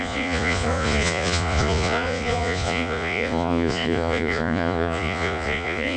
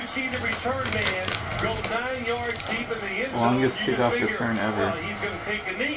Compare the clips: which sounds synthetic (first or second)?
first